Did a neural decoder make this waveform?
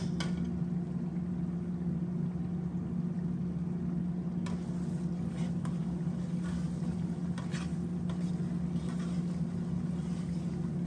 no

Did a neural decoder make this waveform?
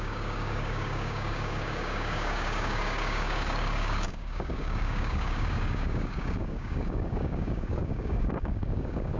yes